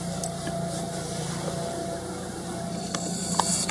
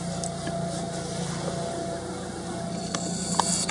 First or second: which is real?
second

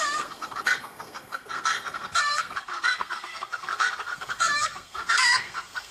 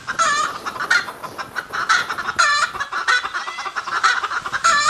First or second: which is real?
second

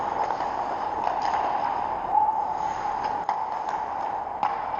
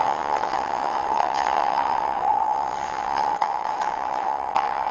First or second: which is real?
first